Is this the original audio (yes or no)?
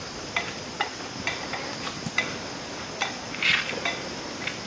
yes